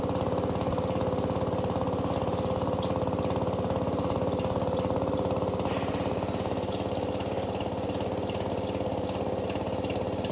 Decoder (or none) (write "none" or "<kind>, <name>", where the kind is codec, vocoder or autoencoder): none